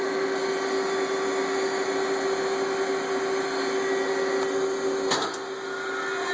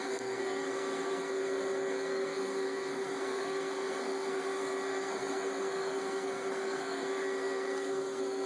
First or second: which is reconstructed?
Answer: second